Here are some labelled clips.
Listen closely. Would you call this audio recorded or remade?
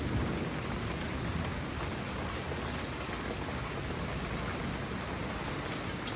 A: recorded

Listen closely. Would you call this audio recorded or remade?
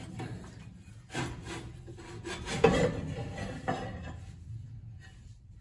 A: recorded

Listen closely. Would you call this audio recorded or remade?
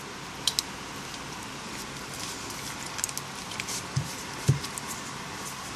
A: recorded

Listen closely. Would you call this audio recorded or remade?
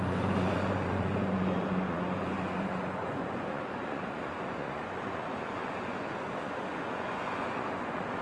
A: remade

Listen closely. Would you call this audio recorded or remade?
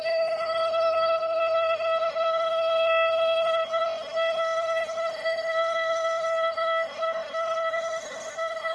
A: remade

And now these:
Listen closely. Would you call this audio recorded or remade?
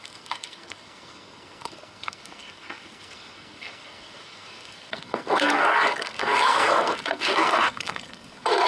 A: remade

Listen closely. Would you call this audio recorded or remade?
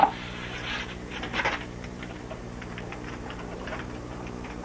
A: remade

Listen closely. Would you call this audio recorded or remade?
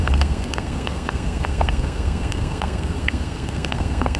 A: remade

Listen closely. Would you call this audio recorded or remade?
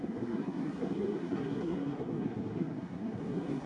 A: remade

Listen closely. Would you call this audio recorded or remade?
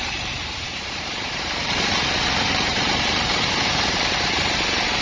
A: remade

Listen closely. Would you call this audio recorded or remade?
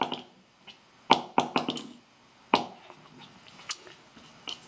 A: recorded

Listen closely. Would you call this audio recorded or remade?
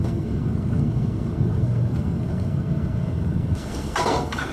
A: remade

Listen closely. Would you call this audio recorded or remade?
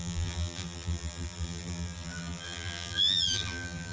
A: remade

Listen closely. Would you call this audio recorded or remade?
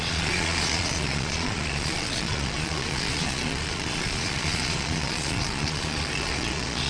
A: remade